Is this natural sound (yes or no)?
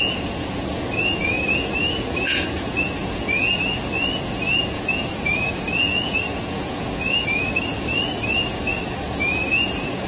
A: no